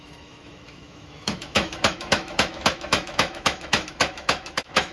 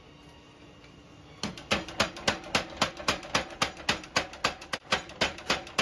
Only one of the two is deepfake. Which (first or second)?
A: first